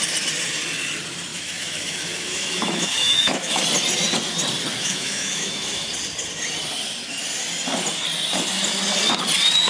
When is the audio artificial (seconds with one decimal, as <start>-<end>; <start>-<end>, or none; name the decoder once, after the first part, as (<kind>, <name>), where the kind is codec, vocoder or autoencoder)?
1.3-3.6 (autoencoder, DAC-VAE); 4.8-5.9